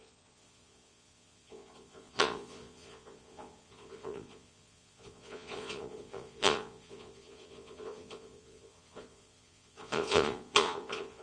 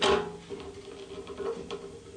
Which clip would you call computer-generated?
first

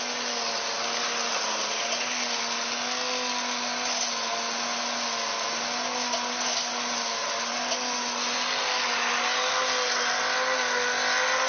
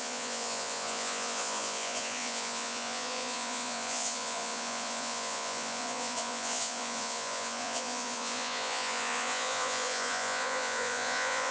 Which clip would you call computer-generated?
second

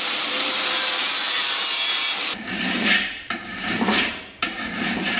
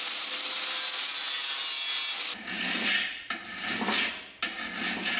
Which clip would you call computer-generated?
first